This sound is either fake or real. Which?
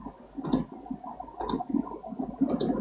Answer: real